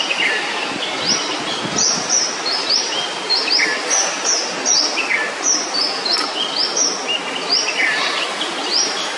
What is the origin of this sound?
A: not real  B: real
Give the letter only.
B